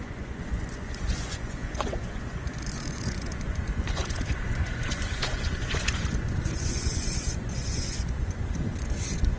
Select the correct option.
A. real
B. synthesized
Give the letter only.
B